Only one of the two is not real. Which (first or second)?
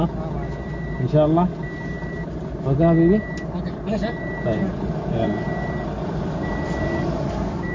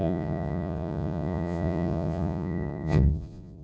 second